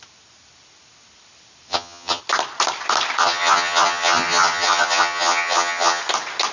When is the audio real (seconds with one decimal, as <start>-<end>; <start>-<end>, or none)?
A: 0.0-1.7; 2.2-3.2; 6.0-6.5